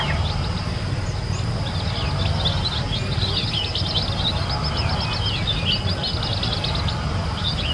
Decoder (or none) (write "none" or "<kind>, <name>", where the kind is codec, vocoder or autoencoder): none